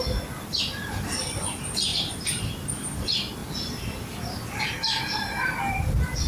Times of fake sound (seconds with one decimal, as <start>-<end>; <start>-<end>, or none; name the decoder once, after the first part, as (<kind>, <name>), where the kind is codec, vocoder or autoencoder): 1.9-2.4 (vocoder, BigVGAN v2)

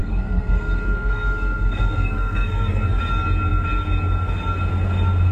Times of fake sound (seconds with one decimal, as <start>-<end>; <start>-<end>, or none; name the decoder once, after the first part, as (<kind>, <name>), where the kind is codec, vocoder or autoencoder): 0.0-3.0 (codec, SNAC)

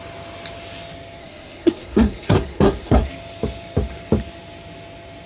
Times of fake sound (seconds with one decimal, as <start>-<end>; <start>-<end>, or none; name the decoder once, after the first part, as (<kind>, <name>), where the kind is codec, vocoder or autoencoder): 1.2-3.1 (codec, SNAC)